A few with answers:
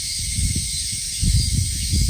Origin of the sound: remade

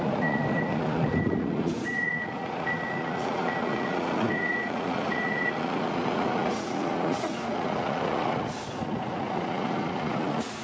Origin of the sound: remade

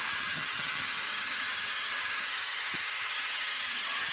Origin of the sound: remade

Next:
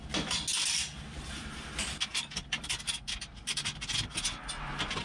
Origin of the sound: recorded